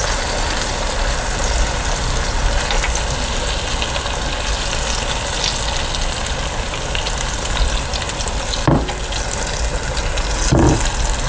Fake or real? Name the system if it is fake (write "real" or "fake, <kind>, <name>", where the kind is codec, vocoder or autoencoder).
real